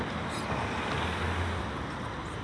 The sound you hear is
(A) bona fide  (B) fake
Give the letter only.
A